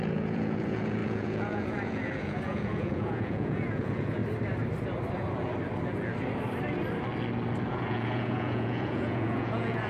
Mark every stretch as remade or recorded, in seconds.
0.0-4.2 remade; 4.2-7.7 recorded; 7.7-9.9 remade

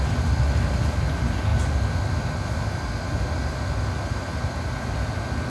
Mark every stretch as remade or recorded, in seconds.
0.0-5.5 recorded